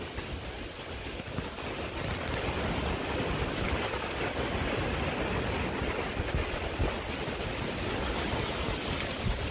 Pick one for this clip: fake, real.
real